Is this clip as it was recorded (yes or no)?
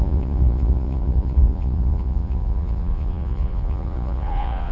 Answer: no